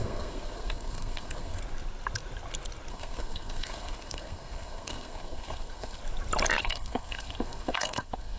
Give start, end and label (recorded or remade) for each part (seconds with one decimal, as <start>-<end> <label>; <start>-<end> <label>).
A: 0.0-1.6 remade; 1.6-2.9 recorded; 2.9-6.0 remade; 6.0-6.6 recorded; 6.6-8.4 remade